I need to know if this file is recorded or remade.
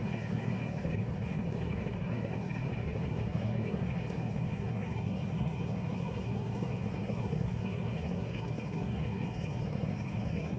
remade